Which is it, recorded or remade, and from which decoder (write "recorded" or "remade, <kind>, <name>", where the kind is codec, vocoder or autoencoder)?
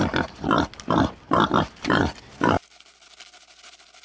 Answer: recorded